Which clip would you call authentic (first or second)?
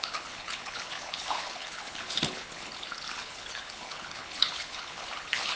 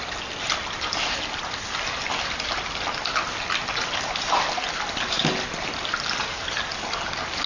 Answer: second